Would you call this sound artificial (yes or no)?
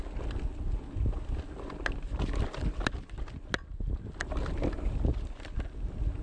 no